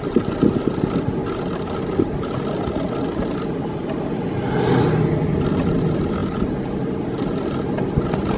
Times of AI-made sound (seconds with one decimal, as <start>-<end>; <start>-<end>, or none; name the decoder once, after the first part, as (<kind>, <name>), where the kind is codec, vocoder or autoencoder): none

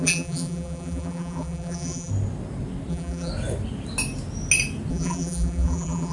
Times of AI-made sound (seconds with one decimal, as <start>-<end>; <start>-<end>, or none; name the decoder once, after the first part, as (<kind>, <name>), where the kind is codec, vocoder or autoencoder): 0.0-2.1 (vocoder, BigVGAN v2); 2.9-3.3; 4.9-6.1

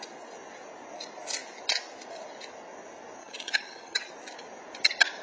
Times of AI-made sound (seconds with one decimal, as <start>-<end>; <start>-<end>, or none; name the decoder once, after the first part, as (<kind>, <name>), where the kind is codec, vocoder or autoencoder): 3.2-4.1 (vocoder, HiFi-GAN)

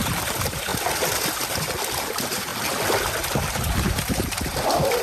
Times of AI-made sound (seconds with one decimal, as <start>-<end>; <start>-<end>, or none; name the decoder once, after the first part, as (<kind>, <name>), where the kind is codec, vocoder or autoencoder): 0.0-0.7 (vocoder, BigVGAN v2); 2.1-2.5; 3.5-5.0

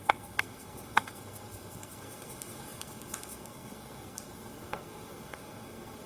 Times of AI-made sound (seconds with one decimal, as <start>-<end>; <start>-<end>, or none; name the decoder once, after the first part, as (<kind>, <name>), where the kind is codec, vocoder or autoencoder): 0.0-6.1 (codec, SNAC)

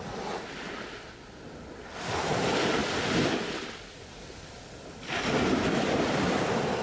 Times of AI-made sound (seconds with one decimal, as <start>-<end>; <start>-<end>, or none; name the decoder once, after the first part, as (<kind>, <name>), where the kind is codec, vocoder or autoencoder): none